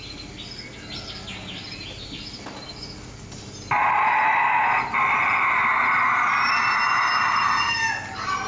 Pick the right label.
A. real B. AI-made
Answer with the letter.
A